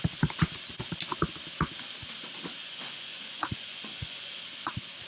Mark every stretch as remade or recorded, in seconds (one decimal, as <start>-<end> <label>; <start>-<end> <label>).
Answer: 0.0-2.6 recorded; 2.6-4.4 remade; 4.4-5.1 recorded